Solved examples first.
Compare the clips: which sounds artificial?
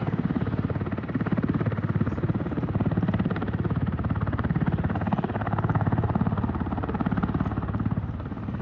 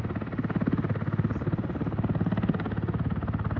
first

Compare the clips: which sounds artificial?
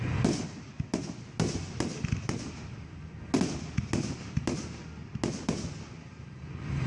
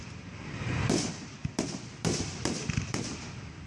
second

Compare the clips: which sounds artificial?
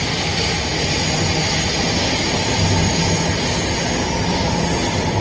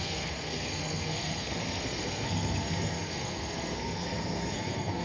second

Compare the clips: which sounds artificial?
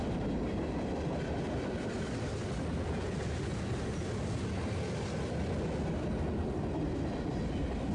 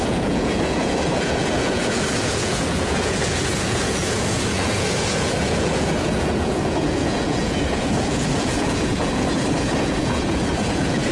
second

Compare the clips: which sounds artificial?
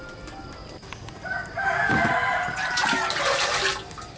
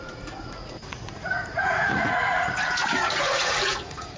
second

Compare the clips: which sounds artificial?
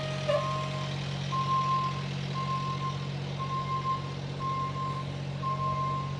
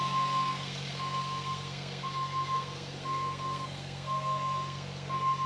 second